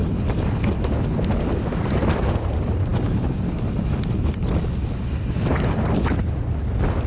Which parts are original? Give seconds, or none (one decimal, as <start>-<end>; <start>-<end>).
0.0-7.1